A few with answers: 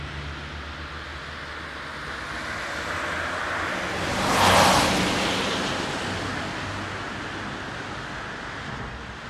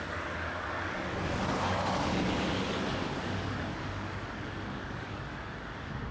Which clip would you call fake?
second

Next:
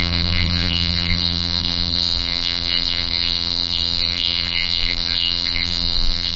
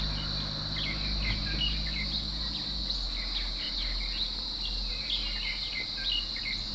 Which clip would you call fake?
first